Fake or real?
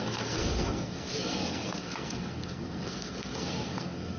fake